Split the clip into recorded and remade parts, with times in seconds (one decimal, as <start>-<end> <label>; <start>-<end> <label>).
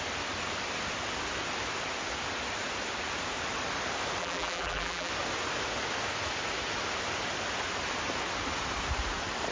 0.0-4.2 recorded; 4.2-5.1 remade; 5.1-9.5 recorded